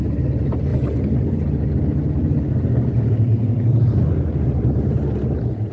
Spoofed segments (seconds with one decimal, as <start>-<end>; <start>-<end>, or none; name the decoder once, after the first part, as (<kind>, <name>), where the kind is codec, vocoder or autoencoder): none